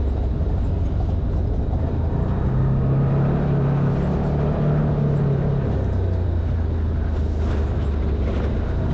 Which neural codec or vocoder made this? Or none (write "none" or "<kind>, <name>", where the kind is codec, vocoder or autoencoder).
none